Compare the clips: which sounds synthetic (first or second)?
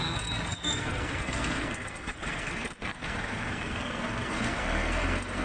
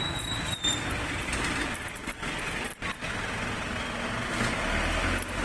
first